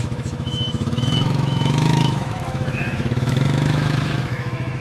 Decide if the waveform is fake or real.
fake